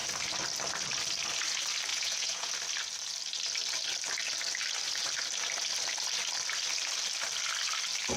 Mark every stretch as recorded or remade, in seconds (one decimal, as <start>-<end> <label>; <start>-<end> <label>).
0.0-1.9 recorded; 1.9-2.5 remade; 2.5-8.2 recorded